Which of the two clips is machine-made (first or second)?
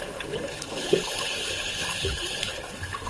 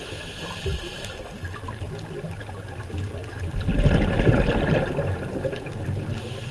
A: first